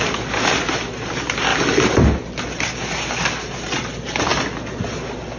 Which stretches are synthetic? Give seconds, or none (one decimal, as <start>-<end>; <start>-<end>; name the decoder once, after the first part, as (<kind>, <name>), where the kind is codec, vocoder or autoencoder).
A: none